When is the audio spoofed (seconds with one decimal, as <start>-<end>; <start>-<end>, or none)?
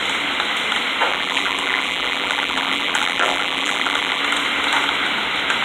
1.1-4.2